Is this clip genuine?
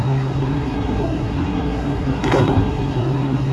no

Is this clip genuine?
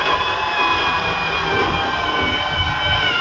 yes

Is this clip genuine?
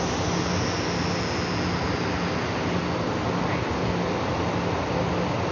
yes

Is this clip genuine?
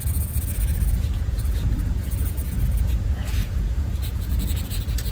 no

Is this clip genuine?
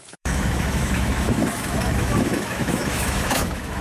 no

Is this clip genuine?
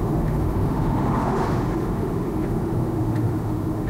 no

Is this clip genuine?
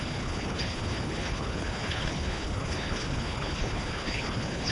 no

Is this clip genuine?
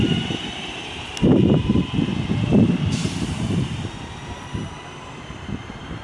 no